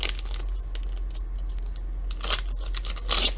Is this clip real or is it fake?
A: real